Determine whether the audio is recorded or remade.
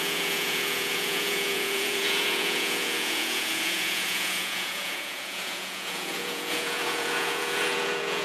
remade